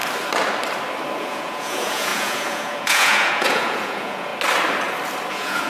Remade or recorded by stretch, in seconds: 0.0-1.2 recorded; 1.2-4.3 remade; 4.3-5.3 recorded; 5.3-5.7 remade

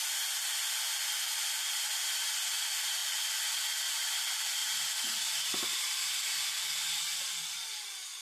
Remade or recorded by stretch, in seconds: 0.0-8.2 remade

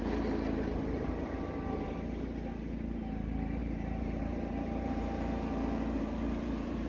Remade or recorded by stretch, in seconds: 0.0-6.9 remade

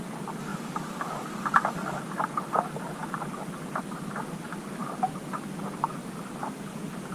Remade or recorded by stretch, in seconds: 0.0-0.5 recorded; 0.5-2.6 remade; 2.6-3.0 recorded; 3.0-4.2 remade; 4.2-4.8 recorded; 4.8-5.6 remade; 5.6-7.1 recorded